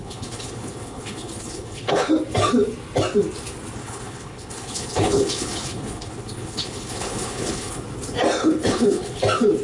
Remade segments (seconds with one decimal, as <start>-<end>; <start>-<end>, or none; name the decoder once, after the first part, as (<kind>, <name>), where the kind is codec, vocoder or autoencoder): 0.0-2.1 (codec, HILCodec); 3.8-7.8; 8.4-9.2